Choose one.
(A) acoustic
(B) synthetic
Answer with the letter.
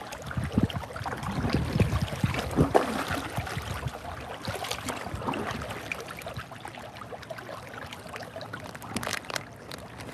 A